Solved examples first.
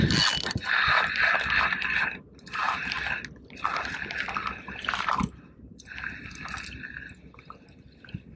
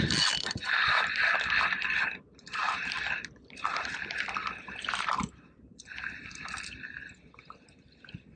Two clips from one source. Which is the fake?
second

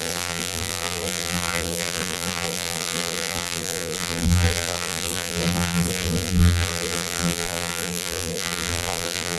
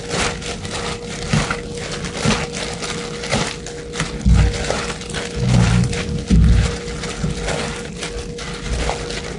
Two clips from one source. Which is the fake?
first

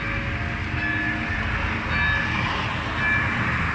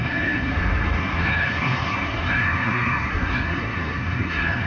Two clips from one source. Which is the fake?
second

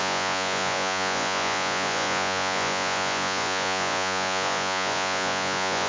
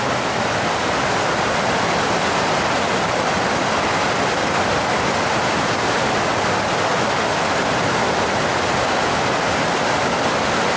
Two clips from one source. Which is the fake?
first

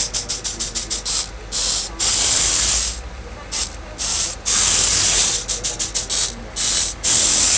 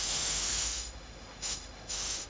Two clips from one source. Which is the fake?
second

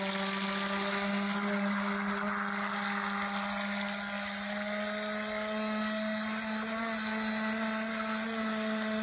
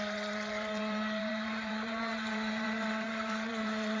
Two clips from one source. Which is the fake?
second